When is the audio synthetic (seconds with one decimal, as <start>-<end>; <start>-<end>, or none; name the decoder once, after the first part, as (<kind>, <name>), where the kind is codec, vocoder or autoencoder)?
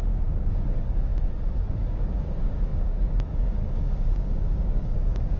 0.0-1.1 (codec, DAC); 1.7-5.4